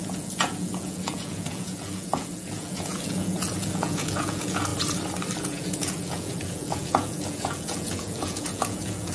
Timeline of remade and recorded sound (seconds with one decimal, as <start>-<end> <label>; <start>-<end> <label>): 0.0-4.7 remade; 4.7-5.4 recorded; 5.4-9.1 remade